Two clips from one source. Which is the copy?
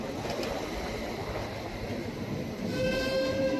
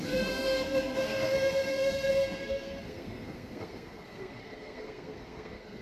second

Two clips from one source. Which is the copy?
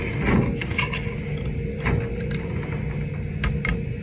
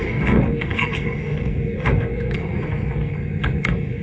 second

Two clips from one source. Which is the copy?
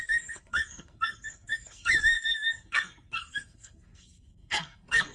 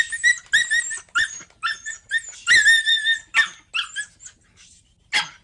first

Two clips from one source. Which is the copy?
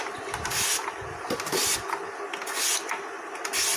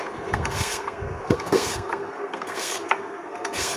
second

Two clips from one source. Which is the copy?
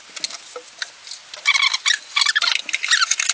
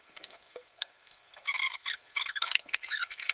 second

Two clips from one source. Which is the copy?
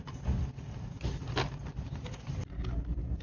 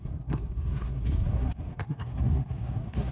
second